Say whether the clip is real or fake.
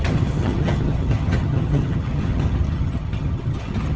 fake